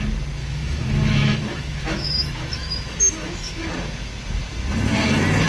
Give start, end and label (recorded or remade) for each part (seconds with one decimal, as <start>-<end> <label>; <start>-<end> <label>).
0.0-0.4 recorded; 0.4-3.7 remade; 3.7-5.5 recorded